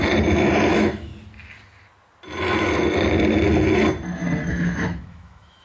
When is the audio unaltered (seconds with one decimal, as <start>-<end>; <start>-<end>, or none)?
0.0-0.7; 1.1-4.5